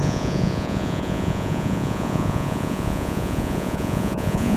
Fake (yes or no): yes